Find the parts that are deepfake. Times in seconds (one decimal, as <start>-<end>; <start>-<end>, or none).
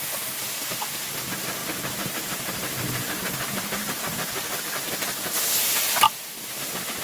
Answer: 1.6-5.3